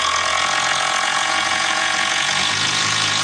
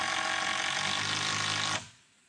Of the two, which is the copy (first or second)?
first